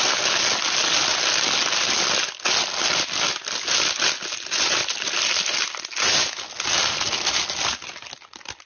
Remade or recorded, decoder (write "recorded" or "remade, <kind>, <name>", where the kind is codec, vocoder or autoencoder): recorded